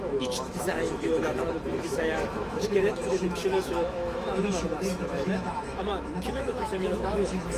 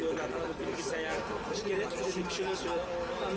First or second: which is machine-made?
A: first